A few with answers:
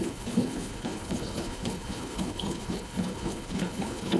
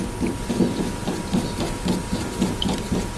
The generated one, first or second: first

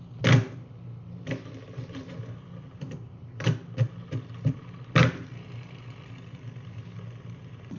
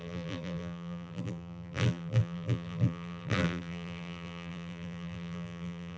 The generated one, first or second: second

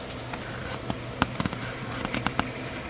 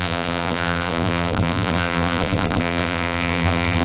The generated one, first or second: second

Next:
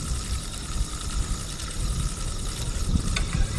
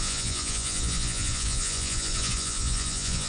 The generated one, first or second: second